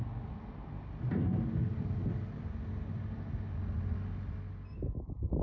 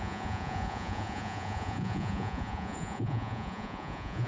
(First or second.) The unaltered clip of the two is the first